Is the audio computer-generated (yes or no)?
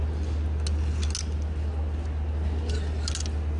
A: no